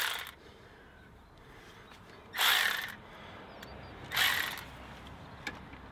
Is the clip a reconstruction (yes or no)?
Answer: no